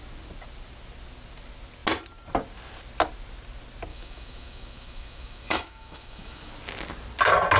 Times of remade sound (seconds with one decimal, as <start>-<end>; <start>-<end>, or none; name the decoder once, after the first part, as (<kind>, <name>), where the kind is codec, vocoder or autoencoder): 3.9-6.5 (autoencoder, DAC-VAE)